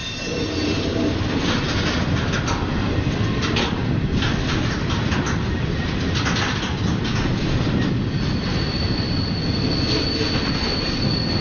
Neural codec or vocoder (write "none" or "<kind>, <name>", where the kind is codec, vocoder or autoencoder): none